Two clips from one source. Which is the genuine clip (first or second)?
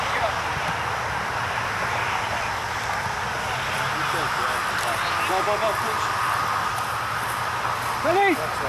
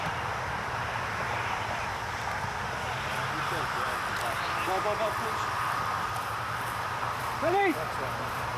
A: first